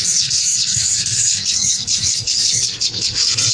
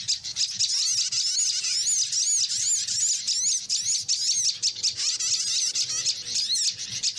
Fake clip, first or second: first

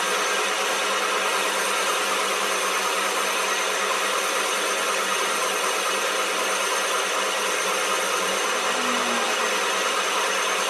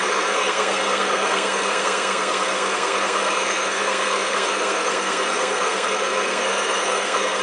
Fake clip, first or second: second